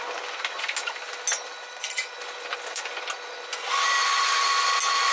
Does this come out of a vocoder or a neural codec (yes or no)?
no